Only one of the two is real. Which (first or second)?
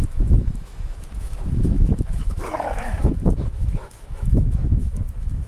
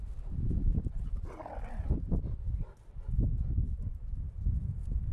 second